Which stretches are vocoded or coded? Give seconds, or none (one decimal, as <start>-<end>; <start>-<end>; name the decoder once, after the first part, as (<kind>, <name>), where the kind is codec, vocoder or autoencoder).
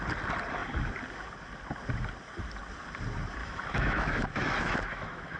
3.4-5.4 (autoencoder, DAC-VAE)